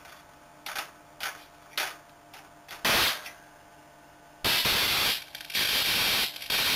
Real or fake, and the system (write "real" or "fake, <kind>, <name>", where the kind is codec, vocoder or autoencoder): real